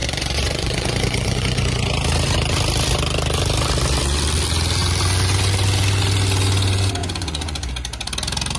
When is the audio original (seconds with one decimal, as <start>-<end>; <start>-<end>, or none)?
1.9-7.0; 7.7-8.6